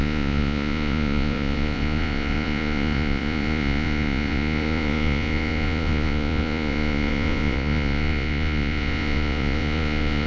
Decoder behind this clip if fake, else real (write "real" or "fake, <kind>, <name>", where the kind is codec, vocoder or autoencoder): fake, vocoder, Vocos